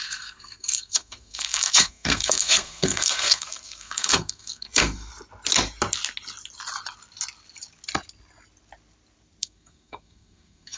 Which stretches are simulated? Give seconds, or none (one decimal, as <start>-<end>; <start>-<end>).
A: 0.0-5.1; 9.4-10.8